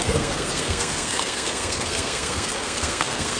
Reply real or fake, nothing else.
fake